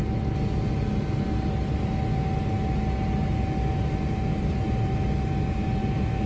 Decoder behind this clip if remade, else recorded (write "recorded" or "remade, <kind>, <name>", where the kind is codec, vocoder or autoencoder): recorded